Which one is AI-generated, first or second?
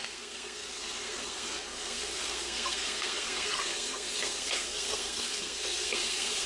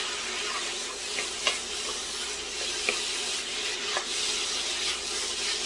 first